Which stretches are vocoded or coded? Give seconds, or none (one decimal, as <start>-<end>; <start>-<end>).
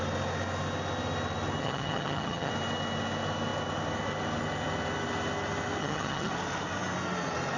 1.6-2.5; 5.8-6.3